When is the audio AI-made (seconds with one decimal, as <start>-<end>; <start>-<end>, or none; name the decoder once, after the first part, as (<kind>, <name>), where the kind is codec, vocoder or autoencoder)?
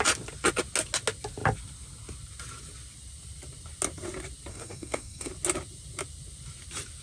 4.5-5.3 (codec, SNAC)